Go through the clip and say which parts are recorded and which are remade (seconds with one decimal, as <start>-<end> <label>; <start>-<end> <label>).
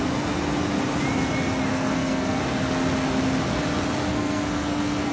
0.0-1.7 recorded; 1.7-2.4 remade; 2.4-4.1 recorded; 4.1-5.1 remade